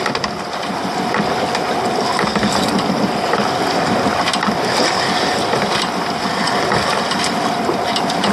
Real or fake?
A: real